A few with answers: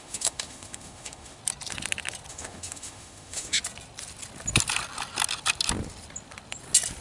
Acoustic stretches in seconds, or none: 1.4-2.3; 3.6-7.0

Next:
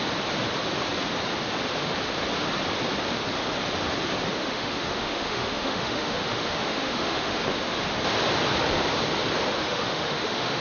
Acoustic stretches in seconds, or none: 0.0-4.4; 7.4-9.5

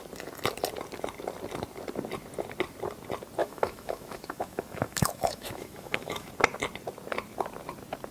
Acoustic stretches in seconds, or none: 0.0-3.4; 6.3-8.1

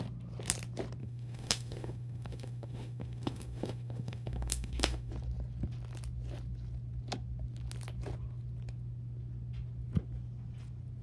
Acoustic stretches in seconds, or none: 0.0-1.0; 5.1-11.0

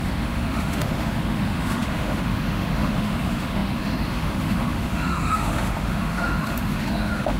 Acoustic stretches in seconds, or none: none